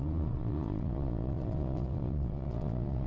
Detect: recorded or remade remade